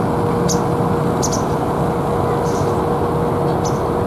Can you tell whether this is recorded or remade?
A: recorded